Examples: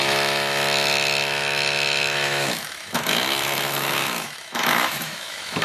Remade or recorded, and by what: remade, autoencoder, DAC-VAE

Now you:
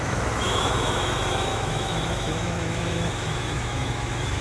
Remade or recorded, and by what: remade, autoencoder, DAC-VAE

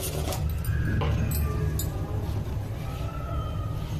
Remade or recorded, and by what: recorded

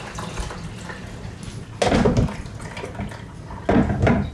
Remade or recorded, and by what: recorded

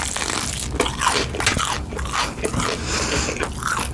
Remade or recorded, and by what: recorded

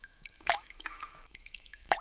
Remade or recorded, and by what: remade, autoencoder, DAC-VAE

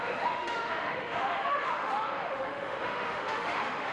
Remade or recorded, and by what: remade, autoencoder, DAC-VAE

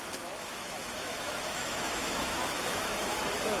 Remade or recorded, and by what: remade, autoencoder, DAC-VAE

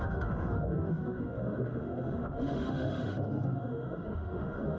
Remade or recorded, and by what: remade, autoencoder, DAC-VAE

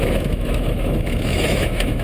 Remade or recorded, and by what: remade, autoencoder, DAC-VAE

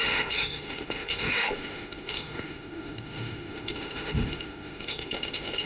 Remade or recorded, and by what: remade, autoencoder, DAC-VAE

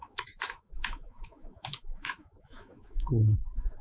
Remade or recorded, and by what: remade, autoencoder, DAC-VAE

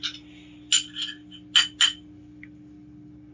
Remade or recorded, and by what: recorded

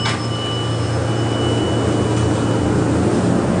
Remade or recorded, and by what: recorded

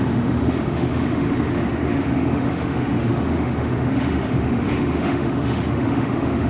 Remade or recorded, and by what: remade, autoencoder, DAC-VAE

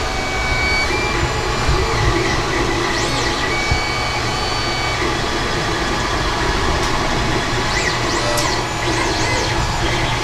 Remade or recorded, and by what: recorded